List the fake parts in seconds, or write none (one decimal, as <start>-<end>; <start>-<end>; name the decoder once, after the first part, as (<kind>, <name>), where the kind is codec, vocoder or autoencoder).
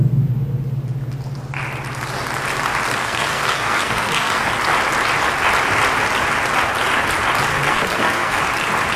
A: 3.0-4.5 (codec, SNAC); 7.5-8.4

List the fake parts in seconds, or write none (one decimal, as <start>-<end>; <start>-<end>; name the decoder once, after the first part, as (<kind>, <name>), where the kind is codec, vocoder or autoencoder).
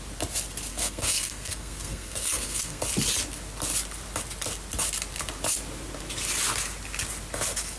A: 0.7-2.8 (codec, SNAC)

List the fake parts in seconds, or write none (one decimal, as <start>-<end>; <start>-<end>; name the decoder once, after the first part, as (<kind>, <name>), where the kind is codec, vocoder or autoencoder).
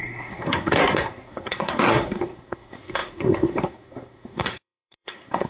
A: 0.0-5.5 (codec, SNAC)